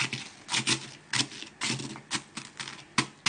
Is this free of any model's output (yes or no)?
yes